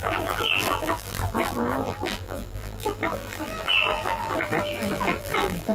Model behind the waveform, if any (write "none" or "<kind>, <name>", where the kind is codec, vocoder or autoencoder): vocoder, BigVGAN v2